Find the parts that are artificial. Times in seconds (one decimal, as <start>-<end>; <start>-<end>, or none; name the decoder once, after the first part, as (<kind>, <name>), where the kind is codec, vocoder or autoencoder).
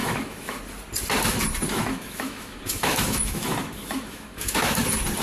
0.0-0.6 (autoencoder, DAC-VAE); 1.7-4.8